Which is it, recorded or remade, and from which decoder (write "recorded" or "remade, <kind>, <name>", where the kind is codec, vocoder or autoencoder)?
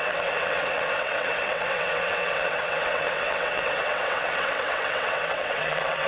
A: remade, vocoder, WaveNeXt